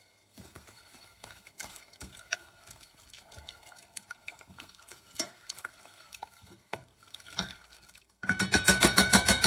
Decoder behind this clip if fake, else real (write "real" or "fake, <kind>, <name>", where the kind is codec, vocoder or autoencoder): fake, codec, SNAC